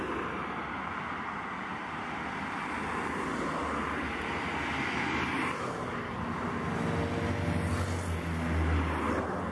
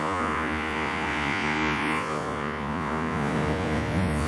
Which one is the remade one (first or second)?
second